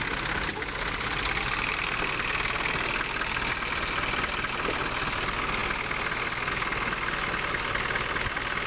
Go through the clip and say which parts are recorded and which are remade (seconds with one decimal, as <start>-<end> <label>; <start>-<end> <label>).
0.0-8.7 recorded